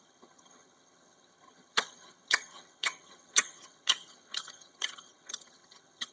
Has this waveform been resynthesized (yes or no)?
yes